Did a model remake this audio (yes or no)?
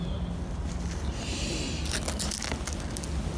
no